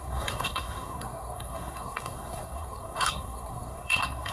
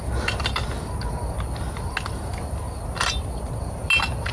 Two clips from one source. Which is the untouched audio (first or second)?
second